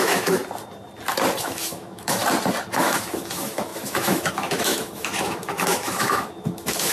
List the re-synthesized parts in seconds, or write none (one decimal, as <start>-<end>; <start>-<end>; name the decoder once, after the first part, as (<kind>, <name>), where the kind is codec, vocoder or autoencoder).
0.0-0.4 (autoencoder, DAC-VAE); 1.4-2.2; 2.7-6.9